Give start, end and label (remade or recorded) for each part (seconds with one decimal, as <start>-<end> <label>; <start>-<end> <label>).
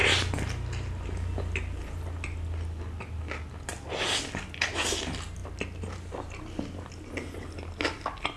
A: 0.0-8.4 recorded